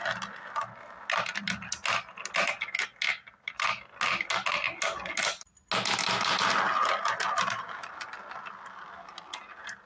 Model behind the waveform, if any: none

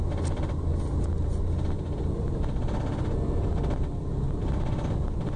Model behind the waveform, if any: none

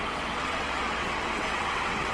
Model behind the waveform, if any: vocoder, WaveNeXt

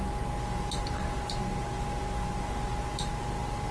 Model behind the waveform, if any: none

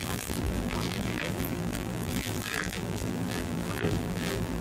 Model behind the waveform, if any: vocoder, BigVGAN v2